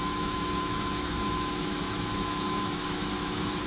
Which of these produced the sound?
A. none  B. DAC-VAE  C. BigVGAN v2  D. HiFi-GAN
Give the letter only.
B